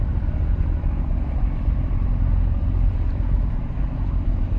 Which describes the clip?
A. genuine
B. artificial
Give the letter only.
B